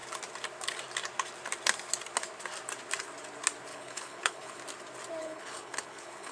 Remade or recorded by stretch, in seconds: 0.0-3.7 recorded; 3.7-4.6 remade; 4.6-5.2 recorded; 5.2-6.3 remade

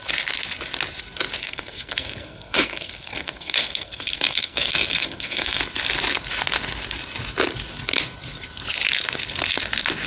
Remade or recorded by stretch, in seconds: 0.0-1.4 recorded; 1.4-5.6 remade; 5.6-10.1 recorded